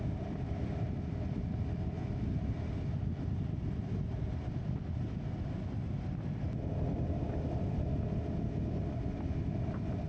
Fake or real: real